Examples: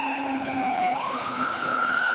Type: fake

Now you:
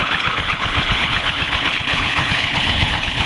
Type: fake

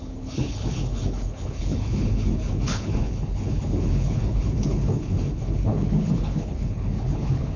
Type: fake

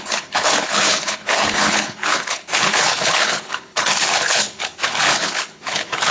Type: fake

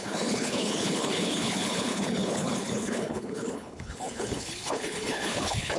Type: fake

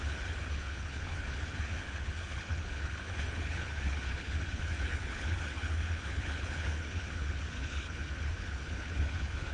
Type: fake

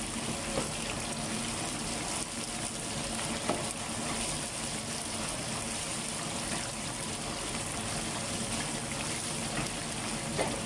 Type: real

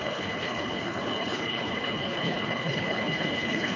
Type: fake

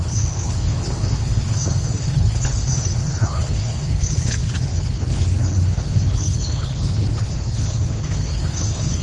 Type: fake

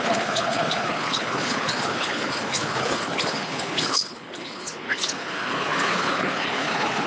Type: fake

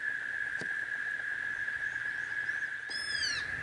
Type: real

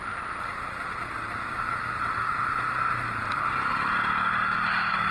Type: real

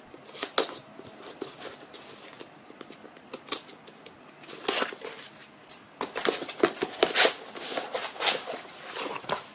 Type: real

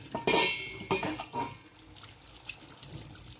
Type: real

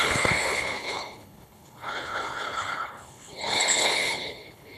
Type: fake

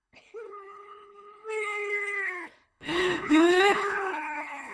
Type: fake